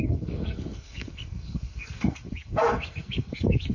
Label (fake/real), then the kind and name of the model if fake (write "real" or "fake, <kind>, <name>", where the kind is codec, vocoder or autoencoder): fake, codec, SNAC